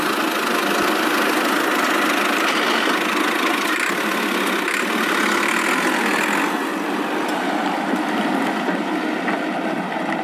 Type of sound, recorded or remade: recorded